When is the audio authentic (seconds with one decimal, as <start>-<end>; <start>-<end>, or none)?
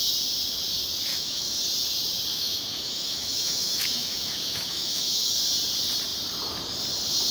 0.0-1.1; 1.6-2.3; 5.3-7.3